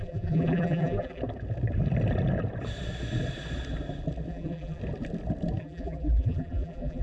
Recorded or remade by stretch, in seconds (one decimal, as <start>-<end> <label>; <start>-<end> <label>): 0.0-1.2 remade; 1.2-4.3 recorded; 4.3-4.8 remade; 4.8-5.6 recorded; 5.6-7.0 remade